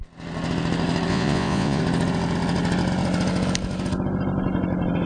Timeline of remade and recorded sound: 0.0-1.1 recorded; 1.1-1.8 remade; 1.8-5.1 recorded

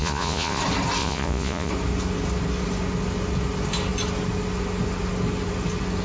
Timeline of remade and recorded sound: 0.0-0.6 remade; 0.6-1.0 recorded; 1.0-1.7 remade; 1.7-6.0 recorded

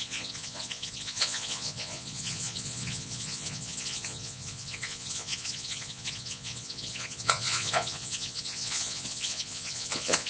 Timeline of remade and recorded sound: 0.0-10.3 remade

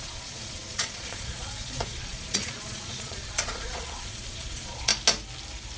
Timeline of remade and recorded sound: 0.0-4.9 remade; 4.9-5.8 recorded

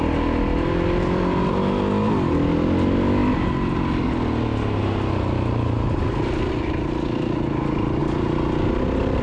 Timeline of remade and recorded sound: 0.0-9.2 recorded

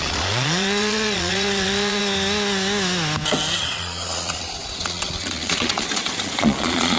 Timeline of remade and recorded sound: 0.0-2.0 remade; 2.0-3.6 recorded; 3.6-7.0 remade